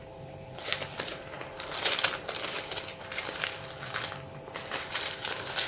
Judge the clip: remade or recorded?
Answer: recorded